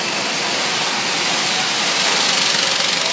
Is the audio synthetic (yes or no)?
no